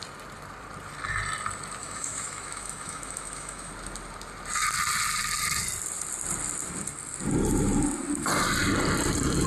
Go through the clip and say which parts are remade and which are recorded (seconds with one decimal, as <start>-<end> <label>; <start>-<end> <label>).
0.0-1.8 recorded; 1.8-3.7 remade; 3.7-9.5 recorded